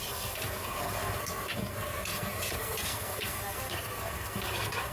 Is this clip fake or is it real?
fake